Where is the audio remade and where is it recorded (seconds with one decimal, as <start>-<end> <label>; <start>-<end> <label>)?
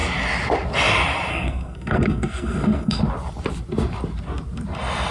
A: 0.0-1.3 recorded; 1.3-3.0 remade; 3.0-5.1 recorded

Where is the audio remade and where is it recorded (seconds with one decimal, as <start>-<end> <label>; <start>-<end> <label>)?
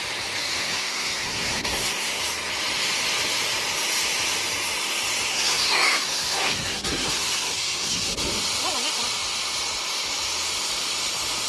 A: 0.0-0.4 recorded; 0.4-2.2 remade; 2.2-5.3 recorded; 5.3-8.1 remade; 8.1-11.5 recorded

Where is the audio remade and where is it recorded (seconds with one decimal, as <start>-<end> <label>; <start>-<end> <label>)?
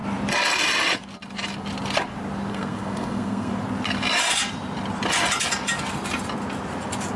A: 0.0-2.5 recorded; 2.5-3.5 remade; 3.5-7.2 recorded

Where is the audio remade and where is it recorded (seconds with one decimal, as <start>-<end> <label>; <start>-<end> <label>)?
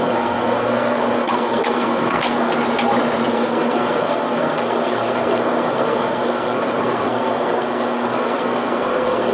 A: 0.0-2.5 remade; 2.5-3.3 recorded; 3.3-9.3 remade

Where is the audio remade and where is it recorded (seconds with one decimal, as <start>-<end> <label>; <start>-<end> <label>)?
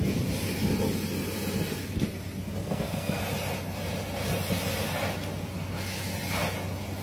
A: 0.0-2.6 recorded; 2.6-3.2 remade; 3.2-7.0 recorded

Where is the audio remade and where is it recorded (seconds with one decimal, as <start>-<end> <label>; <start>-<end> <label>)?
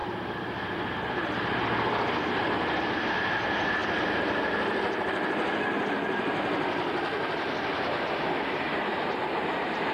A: 0.0-9.9 recorded